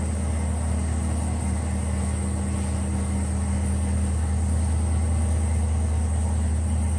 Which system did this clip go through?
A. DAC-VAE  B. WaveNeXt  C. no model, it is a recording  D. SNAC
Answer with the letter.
C